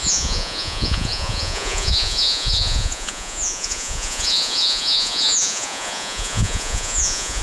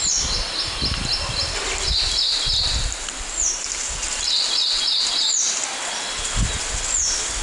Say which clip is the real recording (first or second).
second